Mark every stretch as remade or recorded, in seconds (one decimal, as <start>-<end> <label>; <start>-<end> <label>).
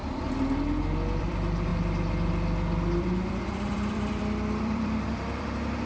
0.0-1.2 recorded; 1.2-5.9 remade